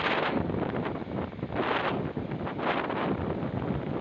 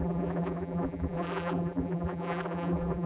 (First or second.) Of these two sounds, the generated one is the second